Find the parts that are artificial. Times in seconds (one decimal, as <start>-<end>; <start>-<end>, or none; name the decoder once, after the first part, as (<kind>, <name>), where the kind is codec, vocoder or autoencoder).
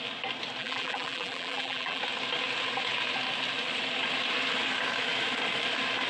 0.6-2.0 (vocoder, BigVGAN v2)